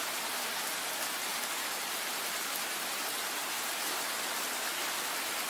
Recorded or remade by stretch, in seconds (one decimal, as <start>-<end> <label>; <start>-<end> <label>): 0.0-1.3 recorded; 1.3-4.5 remade; 4.5-5.5 recorded

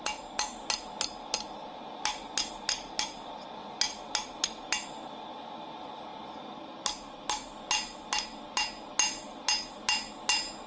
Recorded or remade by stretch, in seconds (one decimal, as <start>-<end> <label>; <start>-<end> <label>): 0.0-10.7 recorded

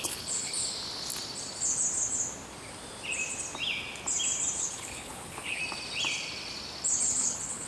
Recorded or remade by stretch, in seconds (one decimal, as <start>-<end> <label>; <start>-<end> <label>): 0.0-0.6 remade; 0.6-4.6 recorded; 4.6-5.6 remade; 5.6-7.1 recorded; 7.1-7.7 remade